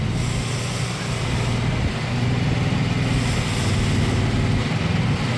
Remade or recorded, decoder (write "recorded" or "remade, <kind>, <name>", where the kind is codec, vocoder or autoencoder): recorded